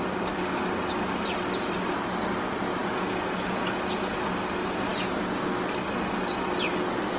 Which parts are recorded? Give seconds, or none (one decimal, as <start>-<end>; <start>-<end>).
0.0-2.8; 4.2-7.2

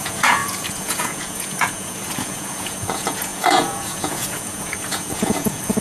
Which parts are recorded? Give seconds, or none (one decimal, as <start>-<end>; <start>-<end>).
none

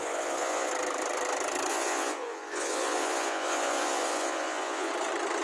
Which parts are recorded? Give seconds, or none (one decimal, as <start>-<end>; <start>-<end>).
0.7-1.7; 4.9-5.4